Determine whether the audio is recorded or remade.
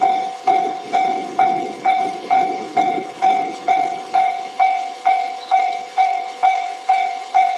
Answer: remade